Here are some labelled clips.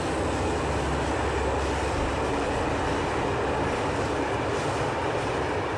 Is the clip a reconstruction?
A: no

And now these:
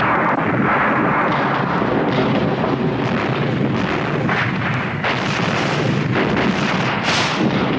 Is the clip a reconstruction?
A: no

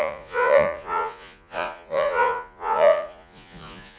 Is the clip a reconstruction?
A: yes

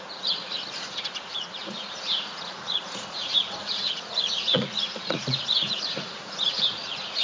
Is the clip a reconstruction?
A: yes